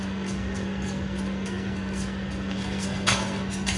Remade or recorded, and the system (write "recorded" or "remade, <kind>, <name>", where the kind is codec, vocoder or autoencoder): remade, codec, SNAC